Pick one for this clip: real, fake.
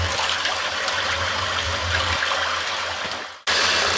real